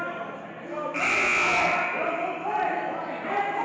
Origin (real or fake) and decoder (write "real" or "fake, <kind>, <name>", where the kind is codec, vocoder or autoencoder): real